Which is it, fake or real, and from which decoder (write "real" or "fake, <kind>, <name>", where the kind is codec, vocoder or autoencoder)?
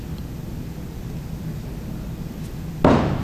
real